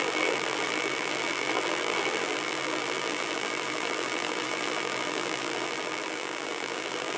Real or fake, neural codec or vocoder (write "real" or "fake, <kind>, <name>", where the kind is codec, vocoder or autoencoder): fake, vocoder, BigVGAN v2